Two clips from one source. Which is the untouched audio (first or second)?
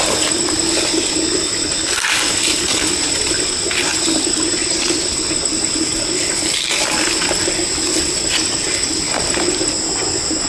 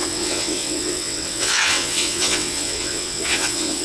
first